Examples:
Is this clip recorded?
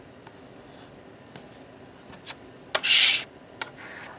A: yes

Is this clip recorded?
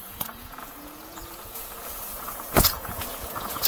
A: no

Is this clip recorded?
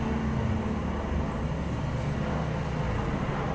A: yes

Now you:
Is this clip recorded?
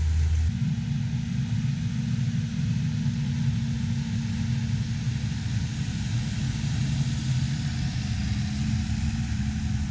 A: yes